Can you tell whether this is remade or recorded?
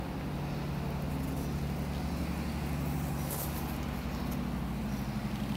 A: recorded